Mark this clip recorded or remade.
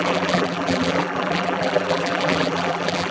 remade